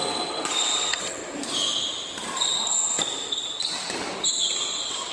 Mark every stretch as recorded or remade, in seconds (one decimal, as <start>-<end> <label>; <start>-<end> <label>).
0.0-0.6 recorded; 0.6-1.2 remade; 1.2-4.3 recorded; 4.3-5.1 remade